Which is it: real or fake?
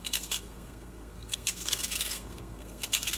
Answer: fake